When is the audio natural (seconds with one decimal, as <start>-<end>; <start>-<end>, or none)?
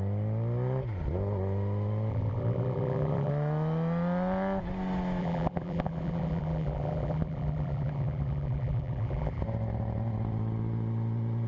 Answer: 0.0-2.1; 3.3-5.2; 9.4-11.5